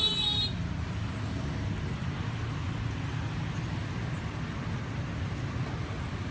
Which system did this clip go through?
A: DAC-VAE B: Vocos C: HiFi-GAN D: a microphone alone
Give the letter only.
D